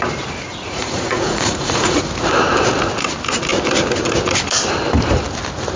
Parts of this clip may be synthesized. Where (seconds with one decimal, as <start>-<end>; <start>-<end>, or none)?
0.5-2.0